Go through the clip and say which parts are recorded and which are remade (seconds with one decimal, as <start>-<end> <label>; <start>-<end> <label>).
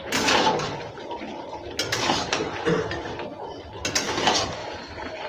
0.0-4.6 recorded; 4.6-5.3 remade